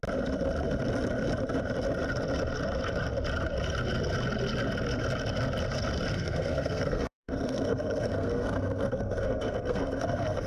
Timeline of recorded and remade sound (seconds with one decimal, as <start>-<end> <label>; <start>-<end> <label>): 0.0-6.1 recorded; 6.1-10.5 remade